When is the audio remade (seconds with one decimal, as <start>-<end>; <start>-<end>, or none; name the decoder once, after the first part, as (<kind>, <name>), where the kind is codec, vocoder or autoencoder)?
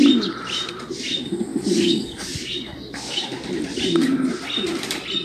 1.5-3.5 (codec, DAC)